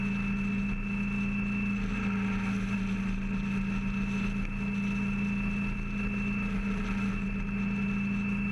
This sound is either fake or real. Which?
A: real